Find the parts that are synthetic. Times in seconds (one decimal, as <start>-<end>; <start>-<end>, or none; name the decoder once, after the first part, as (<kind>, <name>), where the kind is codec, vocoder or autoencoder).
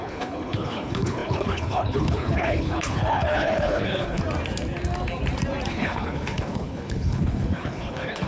0.0-4.2 (codec, HILCodec); 5.7-8.3